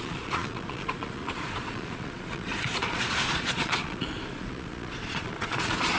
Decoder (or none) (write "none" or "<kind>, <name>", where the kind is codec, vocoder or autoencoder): vocoder, Vocos